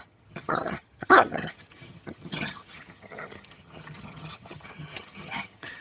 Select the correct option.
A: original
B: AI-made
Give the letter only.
B